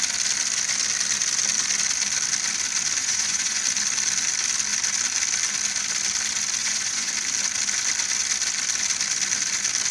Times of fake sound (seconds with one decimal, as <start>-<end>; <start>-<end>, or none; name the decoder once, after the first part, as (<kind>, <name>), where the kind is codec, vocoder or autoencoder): 3.0-3.6 (vocoder, Vocos); 6.6-7.1